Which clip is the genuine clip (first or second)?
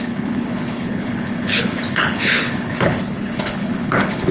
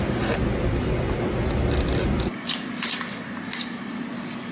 second